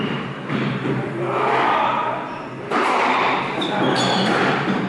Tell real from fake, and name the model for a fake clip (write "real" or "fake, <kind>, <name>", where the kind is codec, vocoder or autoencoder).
fake, vocoder, BigVGAN v2